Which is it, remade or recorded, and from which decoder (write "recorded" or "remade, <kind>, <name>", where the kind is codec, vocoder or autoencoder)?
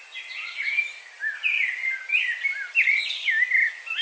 recorded